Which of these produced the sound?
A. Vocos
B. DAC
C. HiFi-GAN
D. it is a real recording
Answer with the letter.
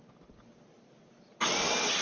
D